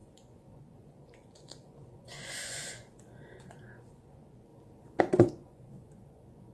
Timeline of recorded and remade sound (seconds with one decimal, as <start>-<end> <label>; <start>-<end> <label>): 0.0-4.5 remade; 4.5-5.0 recorded; 5.0-6.5 remade